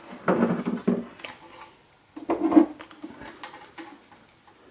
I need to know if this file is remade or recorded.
recorded